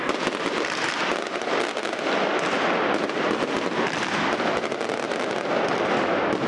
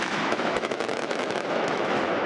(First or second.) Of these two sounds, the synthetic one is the second